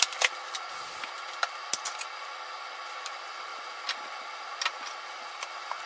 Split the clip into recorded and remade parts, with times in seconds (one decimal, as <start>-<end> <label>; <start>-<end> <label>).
0.0-5.9 recorded